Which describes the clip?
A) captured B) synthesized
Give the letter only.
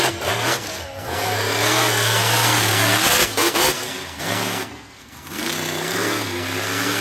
B